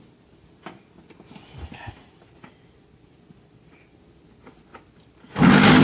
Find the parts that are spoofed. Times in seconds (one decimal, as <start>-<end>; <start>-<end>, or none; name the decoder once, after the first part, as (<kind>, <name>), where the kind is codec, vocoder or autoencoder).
none